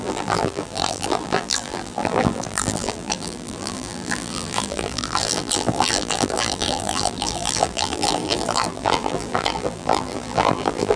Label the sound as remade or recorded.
remade